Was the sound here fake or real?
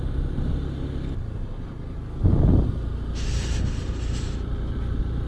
real